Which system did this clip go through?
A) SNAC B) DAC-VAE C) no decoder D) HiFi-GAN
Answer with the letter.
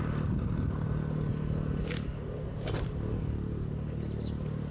C